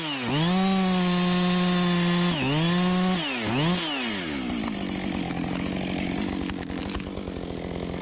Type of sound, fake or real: real